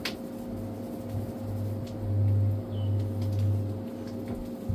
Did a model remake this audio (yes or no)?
no